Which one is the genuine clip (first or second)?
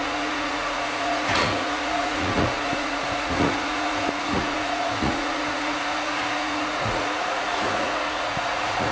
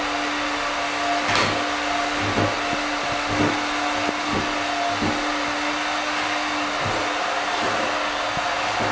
second